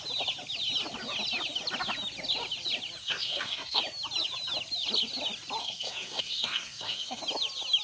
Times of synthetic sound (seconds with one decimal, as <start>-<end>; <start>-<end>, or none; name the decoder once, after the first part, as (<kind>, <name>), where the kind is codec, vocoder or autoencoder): 3.0-3.8 (codec, SNAC); 5.6-7.2